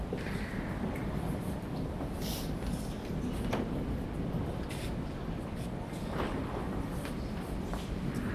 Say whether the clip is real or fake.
real